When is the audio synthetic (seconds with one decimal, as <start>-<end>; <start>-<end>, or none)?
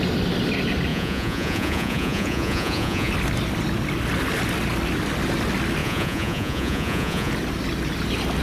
0.9-3.1; 5.8-7.3